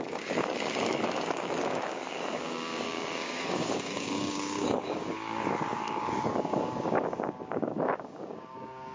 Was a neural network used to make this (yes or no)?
yes